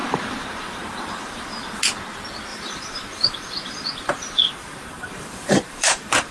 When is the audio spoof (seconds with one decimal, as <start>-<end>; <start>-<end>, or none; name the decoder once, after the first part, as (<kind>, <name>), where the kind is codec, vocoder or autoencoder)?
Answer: 0.0-1.4 (vocoder, BigVGAN v2); 2.5-6.3